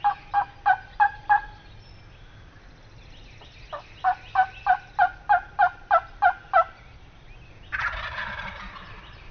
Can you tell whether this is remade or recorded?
recorded